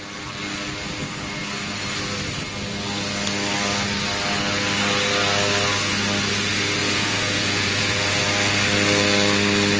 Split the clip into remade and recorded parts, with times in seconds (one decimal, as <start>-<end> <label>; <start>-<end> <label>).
0.0-6.8 recorded; 6.8-8.2 remade; 8.2-9.8 recorded